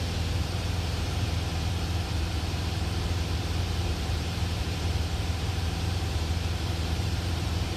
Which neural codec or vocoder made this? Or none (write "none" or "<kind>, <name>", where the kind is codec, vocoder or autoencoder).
vocoder, BigVGAN v2